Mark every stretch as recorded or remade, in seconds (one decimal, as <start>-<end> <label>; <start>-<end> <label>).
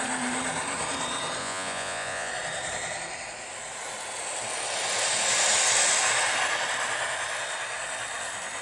0.0-1.4 recorded; 1.4-2.3 remade; 2.3-8.6 recorded